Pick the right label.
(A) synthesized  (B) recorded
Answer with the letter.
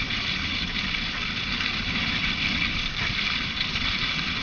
A